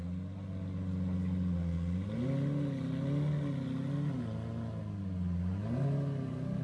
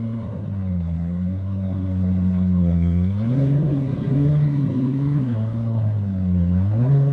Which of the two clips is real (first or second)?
first